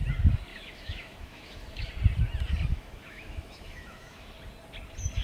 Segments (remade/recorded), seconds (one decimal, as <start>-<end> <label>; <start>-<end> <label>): 0.0-0.5 recorded; 0.5-1.9 remade; 1.9-2.7 recorded; 2.7-4.3 remade; 4.3-5.2 recorded